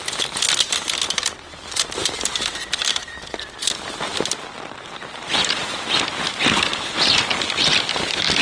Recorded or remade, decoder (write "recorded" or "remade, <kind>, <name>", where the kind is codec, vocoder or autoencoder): recorded